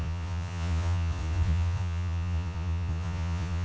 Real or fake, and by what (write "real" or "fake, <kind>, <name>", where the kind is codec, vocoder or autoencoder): fake, vocoder, Vocos